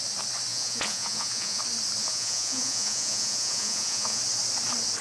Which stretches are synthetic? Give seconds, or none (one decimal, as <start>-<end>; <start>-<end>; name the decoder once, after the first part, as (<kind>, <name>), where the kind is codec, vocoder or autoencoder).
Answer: 0.5-1.6 (vocoder, Vocos); 2.0-4.2